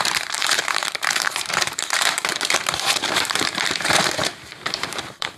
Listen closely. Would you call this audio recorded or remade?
remade